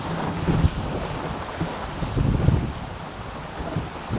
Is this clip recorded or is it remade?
recorded